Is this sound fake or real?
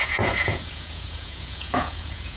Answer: fake